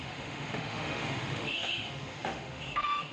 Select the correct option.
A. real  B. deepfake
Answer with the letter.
B